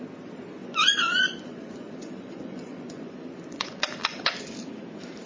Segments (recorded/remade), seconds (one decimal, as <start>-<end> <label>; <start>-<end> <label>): 0.0-0.6 recorded; 0.6-3.8 remade; 3.8-5.3 recorded